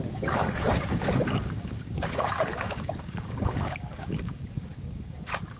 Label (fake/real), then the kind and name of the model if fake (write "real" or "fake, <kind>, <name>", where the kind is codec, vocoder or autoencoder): fake, codec, DAC